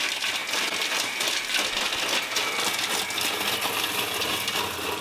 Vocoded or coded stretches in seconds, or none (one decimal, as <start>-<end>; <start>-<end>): none